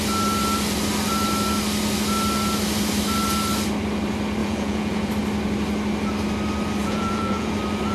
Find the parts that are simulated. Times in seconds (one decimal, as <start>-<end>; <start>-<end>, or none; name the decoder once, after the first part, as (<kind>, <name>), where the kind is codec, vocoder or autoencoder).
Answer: 4.4-5.1 (vocoder, Vocos); 6.8-7.5